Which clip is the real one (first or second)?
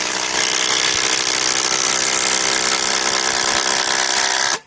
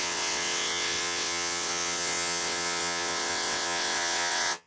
first